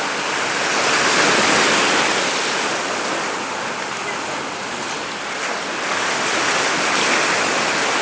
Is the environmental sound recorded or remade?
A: recorded